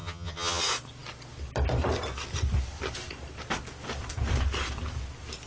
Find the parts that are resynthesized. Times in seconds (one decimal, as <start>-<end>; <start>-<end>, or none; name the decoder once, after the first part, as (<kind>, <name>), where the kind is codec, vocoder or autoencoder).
0.0-0.6 (vocoder, HiFi-GAN)